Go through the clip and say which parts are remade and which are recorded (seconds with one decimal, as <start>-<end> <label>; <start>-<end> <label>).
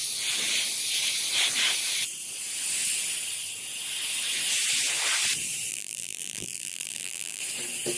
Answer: 0.0-5.7 recorded; 5.7-7.4 remade; 7.4-8.0 recorded